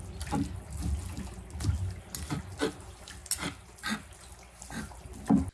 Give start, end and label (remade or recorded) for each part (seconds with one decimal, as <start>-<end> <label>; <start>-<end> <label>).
0.0-5.5 recorded